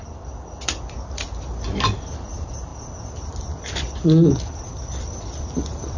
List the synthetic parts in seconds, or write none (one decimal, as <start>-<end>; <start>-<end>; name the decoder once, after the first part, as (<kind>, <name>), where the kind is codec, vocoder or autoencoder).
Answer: none